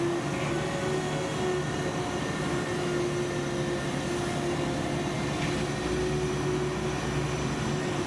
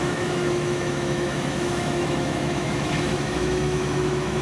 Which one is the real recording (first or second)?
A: first